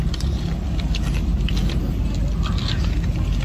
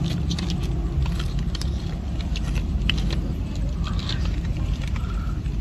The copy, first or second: second